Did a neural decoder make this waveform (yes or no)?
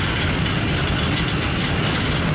no